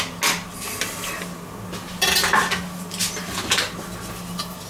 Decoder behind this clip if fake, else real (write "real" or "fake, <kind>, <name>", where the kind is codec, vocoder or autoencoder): real